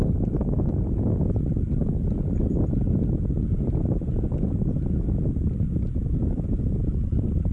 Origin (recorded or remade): recorded